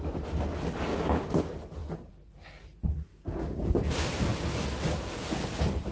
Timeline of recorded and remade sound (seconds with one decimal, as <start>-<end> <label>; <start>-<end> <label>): 0.0-0.9 recorded; 0.9-1.4 remade; 1.4-3.1 recorded; 3.1-3.8 remade; 3.8-5.9 recorded